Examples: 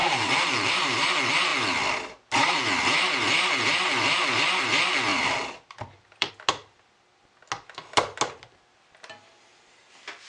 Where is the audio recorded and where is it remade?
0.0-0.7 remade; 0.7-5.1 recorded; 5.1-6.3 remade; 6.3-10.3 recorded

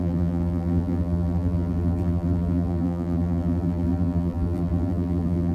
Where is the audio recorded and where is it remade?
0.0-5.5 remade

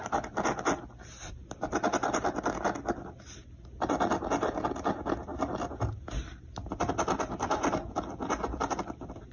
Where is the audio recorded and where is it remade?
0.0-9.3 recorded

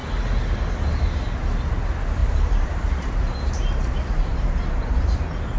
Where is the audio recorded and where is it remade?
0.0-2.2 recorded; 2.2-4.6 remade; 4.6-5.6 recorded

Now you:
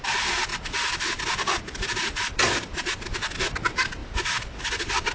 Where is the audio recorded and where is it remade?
0.0-4.0 recorded; 4.0-4.6 remade; 4.6-5.1 recorded

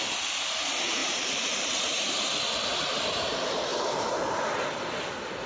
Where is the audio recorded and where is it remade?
0.0-1.0 recorded; 1.0-2.2 remade; 2.2-3.7 recorded; 3.7-4.4 remade; 4.4-5.5 recorded